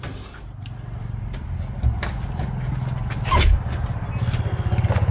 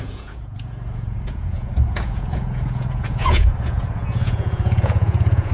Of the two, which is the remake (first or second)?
second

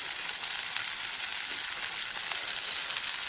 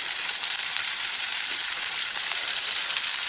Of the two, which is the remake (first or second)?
second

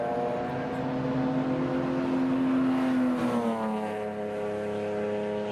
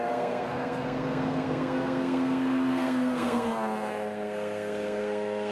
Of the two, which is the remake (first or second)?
second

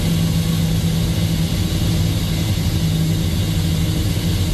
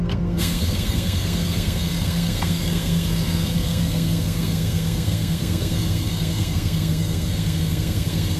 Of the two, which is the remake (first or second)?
second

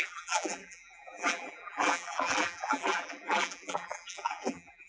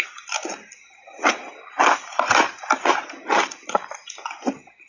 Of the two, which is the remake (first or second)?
first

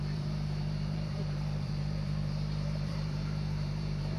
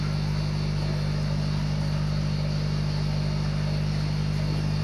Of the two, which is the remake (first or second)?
first